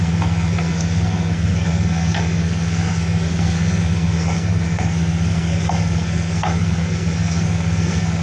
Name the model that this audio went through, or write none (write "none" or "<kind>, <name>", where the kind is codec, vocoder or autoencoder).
codec, SNAC